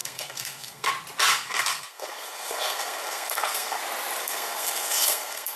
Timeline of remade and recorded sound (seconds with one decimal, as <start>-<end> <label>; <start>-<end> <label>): 0.0-0.9 remade; 0.9-1.3 recorded; 1.3-3.8 remade; 3.8-4.2 recorded; 4.2-5.6 remade